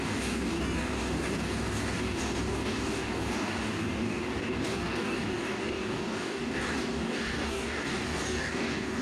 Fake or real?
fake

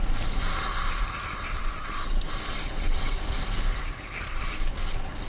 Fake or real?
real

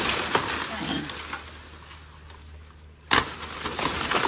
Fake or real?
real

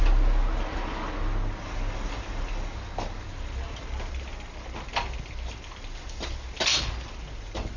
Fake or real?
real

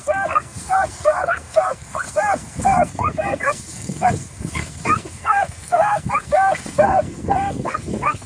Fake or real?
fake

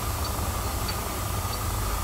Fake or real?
real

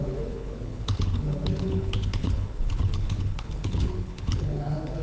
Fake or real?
fake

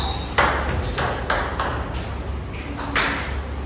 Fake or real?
real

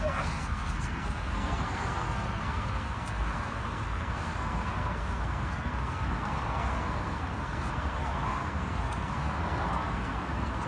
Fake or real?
fake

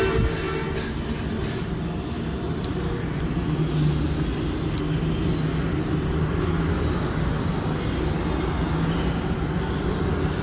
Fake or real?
real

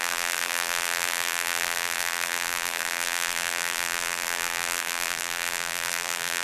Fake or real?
fake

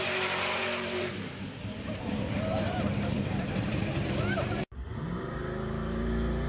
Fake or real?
fake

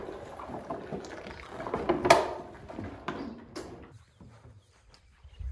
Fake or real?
real